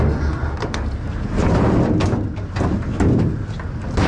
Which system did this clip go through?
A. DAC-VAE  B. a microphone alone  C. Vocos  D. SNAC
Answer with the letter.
B